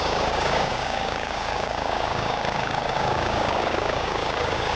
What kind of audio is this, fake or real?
fake